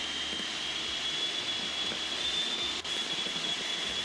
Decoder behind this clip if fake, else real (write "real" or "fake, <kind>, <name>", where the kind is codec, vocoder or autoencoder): real